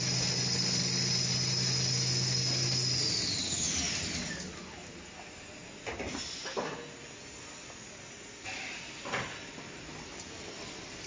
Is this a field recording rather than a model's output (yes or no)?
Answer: yes